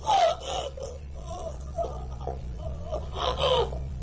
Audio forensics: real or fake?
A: fake